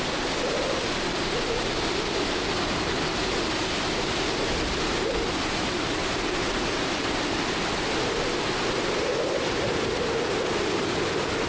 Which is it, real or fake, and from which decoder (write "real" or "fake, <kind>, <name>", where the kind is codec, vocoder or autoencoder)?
real